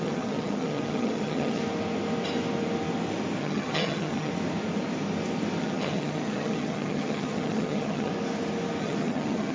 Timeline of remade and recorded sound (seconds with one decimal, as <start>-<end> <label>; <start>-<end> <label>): 0.0-1.6 remade; 1.6-3.4 recorded; 3.4-4.3 remade; 4.3-5.6 recorded; 5.6-8.1 remade; 8.1-8.8 recorded; 8.8-9.5 remade